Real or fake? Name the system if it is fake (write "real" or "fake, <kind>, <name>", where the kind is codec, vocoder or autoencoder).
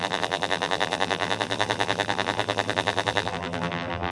fake, vocoder, BigVGAN v2